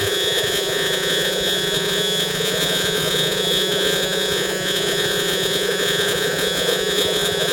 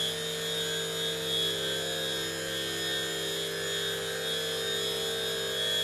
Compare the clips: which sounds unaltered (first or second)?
second